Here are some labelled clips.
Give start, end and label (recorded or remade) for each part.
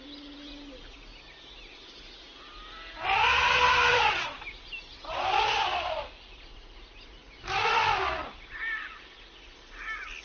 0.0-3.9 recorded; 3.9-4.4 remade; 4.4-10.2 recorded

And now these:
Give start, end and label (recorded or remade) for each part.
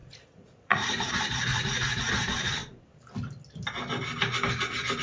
0.0-1.1 remade; 1.1-1.5 recorded; 1.5-2.1 remade; 2.1-5.0 recorded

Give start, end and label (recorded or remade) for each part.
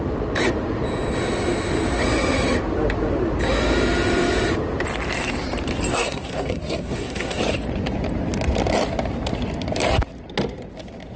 0.0-5.9 recorded; 5.9-7.4 remade; 7.4-11.2 recorded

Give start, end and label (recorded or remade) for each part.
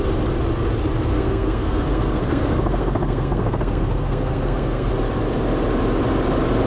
0.0-1.1 recorded; 1.1-4.9 remade; 4.9-6.7 recorded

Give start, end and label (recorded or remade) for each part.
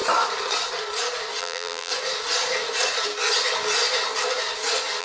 0.0-1.4 recorded; 1.4-1.9 remade; 1.9-5.0 recorded